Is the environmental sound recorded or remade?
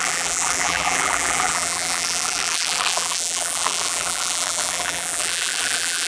remade